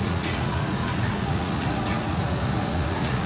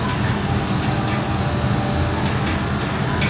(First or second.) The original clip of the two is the second